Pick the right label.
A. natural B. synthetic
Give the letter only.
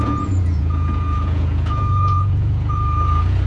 B